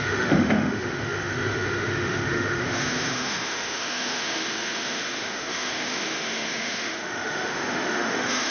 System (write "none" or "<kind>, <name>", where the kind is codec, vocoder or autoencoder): autoencoder, DAC-VAE